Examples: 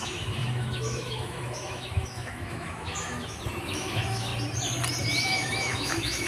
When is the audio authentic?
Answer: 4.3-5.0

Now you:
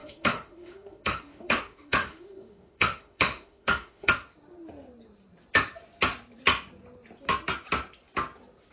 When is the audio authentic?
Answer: 4.1-8.7

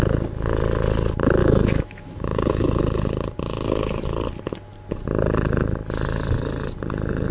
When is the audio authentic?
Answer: 0.0-1.4; 2.8-7.3

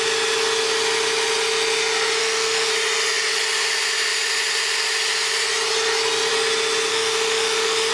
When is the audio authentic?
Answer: 0.0-2.2; 2.7-6.9

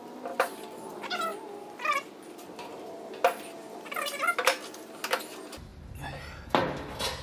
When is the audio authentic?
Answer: 0.0-7.2

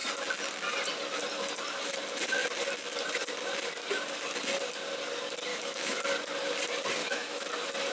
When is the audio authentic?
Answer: 0.0-5.5; 6.0-7.0; 7.5-7.9